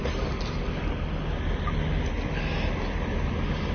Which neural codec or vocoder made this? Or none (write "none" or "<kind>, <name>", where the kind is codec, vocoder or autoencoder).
none